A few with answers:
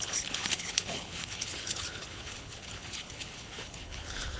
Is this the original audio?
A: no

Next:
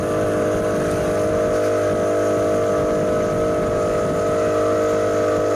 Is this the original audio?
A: yes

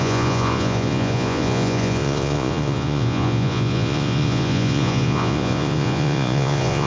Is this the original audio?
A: no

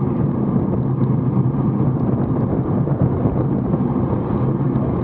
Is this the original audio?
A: yes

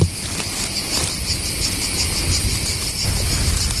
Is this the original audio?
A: yes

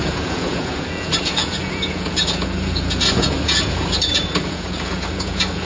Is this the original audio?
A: no